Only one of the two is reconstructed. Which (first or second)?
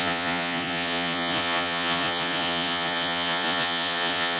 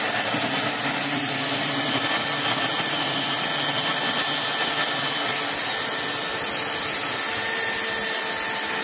first